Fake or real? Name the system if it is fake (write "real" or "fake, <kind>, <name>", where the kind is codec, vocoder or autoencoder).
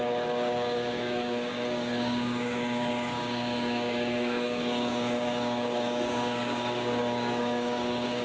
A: fake, codec, DAC